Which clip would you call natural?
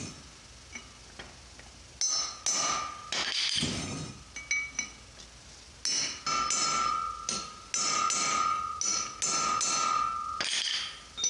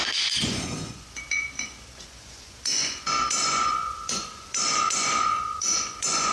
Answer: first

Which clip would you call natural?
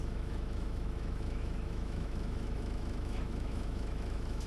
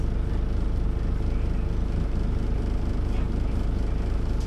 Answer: second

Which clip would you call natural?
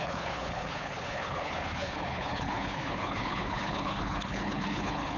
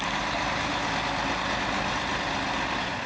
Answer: second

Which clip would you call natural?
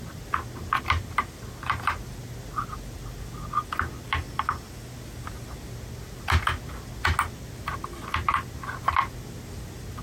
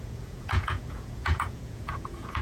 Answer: first